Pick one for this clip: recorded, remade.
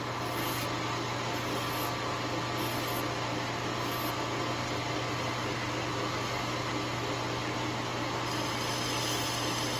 recorded